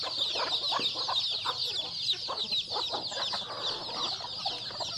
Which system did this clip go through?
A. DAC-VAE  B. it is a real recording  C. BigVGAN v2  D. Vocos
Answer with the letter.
B